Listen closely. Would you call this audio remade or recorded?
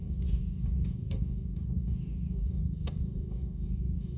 remade